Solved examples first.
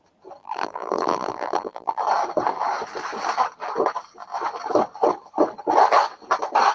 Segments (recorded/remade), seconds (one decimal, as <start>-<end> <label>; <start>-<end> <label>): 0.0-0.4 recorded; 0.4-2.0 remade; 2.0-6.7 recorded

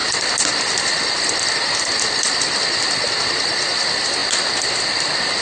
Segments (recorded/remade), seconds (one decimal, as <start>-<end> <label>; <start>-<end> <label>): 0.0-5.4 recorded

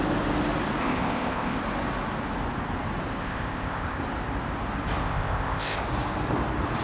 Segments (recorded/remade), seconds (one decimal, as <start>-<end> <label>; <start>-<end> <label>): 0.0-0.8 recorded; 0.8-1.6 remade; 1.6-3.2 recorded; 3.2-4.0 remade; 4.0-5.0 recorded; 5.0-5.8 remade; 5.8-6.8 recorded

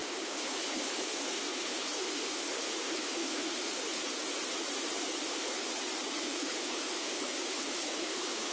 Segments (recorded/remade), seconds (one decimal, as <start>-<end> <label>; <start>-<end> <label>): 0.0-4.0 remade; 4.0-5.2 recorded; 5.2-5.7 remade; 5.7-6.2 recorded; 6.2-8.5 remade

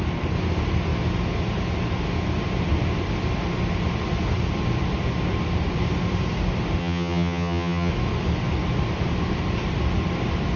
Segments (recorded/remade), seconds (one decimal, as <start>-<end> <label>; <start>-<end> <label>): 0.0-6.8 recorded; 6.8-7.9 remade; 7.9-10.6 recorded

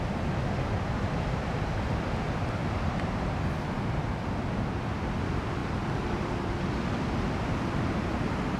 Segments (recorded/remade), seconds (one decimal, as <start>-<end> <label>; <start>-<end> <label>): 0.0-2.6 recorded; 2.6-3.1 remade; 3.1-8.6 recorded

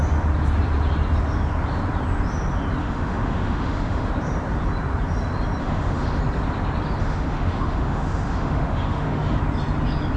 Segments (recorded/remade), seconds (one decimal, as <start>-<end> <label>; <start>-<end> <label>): 0.0-2.8 recorded; 2.8-4.1 remade; 4.1-5.6 recorded; 5.6-6.2 remade; 6.2-7.0 recorded; 7.0-9.4 remade; 9.4-10.2 recorded